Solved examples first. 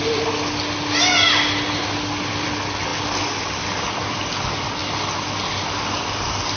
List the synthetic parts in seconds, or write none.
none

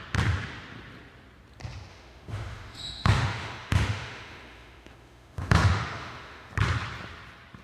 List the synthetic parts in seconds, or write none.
1.9-6.5

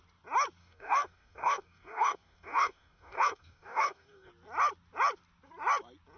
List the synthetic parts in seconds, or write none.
0.6-4.3

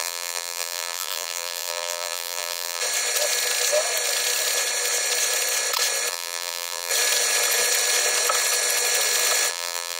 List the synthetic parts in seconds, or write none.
0.0-2.8; 6.1-6.9; 9.5-10.0